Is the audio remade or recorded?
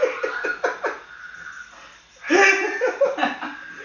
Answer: recorded